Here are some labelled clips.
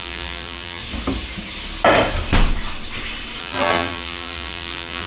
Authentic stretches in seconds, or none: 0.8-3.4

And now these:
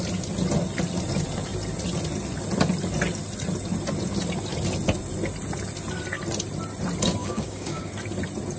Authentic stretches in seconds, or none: 0.0-7.2; 7.9-8.6

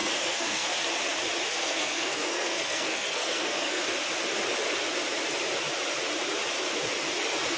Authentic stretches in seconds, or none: 0.7-1.5; 3.8-7.6

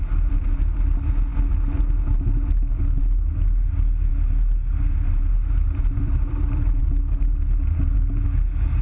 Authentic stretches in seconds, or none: 0.0-8.8

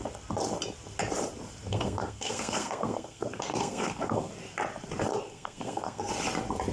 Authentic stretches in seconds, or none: 0.0-1.7; 4.3-5.3; 6.1-6.7

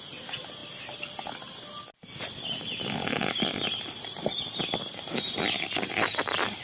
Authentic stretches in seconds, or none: 0.0-3.0